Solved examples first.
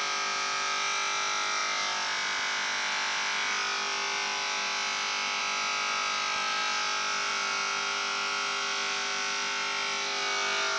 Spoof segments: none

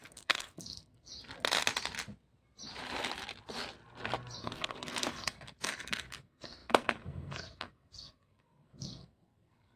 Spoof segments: 0.0-1.1 (codec, SNAC); 4.4-9.8

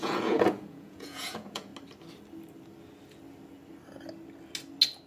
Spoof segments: 0.0-1.7 (vocoder, Vocos)

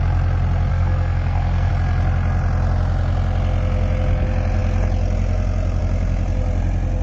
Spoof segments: 0.7-1.7 (codec, SNAC)

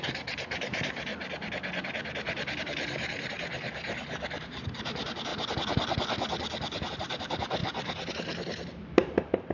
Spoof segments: 0.0-1.1 (vocoder, BigVGAN v2); 2.6-5.3; 6.9-9.5

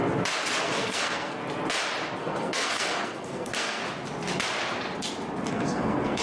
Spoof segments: 0.6-1.4 (codec, SNAC); 2.2-3.8; 5.5-6.2

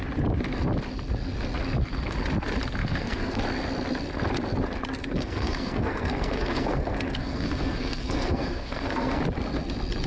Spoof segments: 2.8-3.4 (codec, SNAC); 5.0-9.2

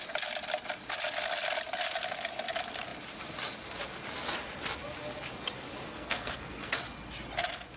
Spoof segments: 5.9-6.8 (codec, SNAC)